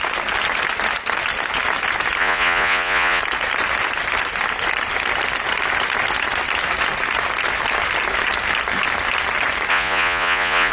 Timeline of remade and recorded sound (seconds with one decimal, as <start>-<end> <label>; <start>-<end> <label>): 0.0-2.2 recorded; 2.2-3.2 remade; 3.2-9.7 recorded; 9.7-10.7 remade